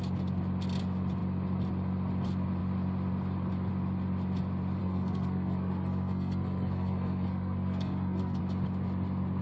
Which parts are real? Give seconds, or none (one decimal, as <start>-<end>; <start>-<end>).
0.0-4.8; 8.4-9.4